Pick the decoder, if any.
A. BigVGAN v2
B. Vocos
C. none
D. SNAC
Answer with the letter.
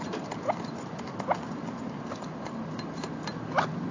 C